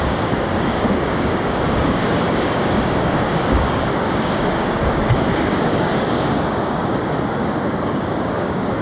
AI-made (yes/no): yes